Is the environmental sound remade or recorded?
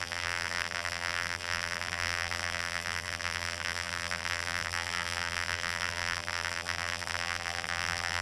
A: remade